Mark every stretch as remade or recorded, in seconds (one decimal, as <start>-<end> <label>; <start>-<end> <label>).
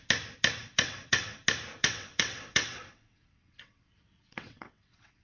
0.0-0.6 recorded; 0.6-1.4 remade; 1.4-1.8 recorded; 1.8-5.2 remade